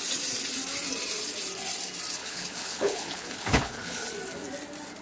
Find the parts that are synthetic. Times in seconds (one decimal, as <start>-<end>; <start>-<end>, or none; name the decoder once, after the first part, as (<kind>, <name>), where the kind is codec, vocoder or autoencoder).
2.2-4.1 (codec, HILCodec)